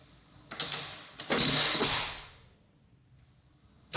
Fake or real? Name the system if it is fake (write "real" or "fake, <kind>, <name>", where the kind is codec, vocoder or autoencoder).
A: real